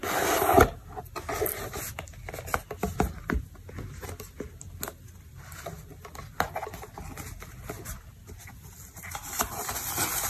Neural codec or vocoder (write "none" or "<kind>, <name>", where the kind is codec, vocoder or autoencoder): none